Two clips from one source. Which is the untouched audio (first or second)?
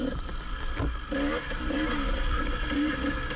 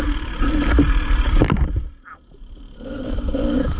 first